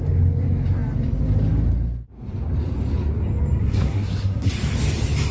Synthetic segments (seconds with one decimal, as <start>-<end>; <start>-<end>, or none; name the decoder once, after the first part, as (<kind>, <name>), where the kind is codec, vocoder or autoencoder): 3.6-4.5 (codec, SNAC)